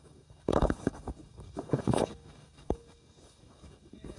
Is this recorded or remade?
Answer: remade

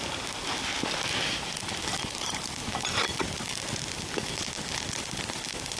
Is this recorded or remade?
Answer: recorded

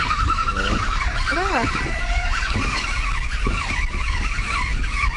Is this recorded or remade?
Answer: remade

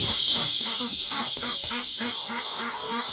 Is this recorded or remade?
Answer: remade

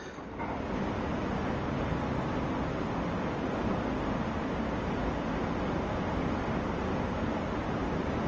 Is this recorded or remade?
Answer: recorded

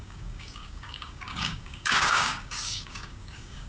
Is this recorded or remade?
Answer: remade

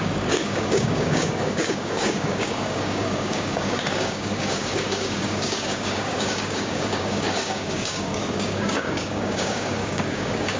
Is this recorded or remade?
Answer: remade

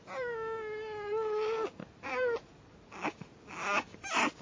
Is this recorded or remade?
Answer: recorded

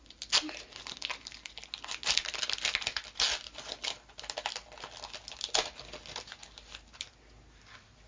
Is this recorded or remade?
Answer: recorded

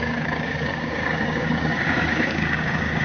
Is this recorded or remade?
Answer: remade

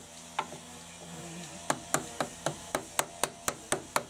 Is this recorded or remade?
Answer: recorded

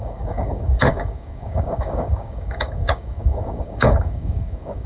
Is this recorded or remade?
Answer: remade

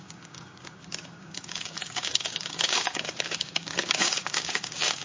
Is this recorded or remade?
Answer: remade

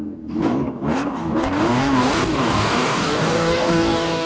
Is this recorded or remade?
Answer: remade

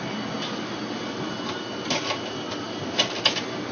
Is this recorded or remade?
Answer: recorded